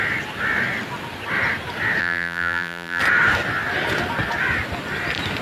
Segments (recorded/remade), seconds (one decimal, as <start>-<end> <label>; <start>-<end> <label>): 0.0-2.0 recorded; 2.0-3.0 remade; 3.0-5.4 recorded